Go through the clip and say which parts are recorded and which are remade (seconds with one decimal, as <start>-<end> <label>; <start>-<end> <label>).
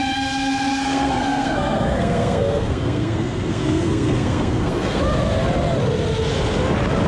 0.0-0.7 recorded; 0.7-5.0 remade; 5.0-7.1 recorded